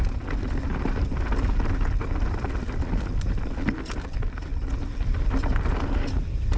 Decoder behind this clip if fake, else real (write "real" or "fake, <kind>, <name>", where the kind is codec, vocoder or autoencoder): real